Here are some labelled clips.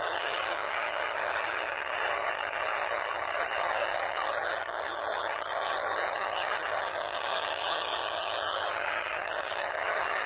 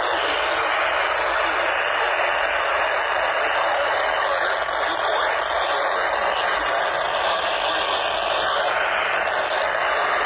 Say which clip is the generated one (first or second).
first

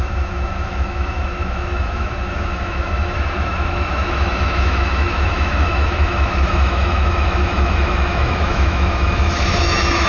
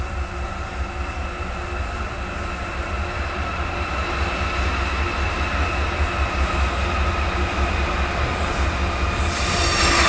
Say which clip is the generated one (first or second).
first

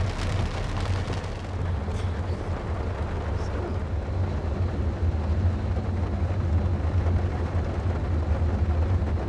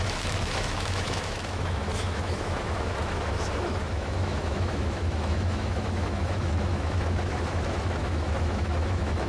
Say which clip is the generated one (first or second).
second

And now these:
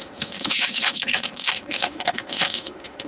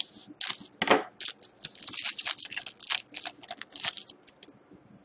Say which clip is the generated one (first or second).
first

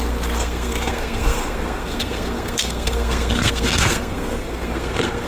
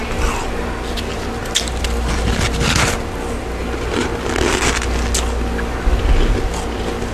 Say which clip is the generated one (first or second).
first